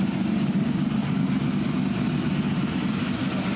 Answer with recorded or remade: recorded